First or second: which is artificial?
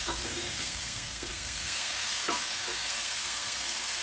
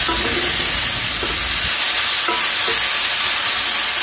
first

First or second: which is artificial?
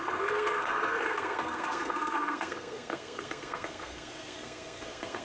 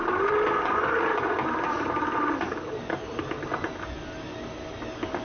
first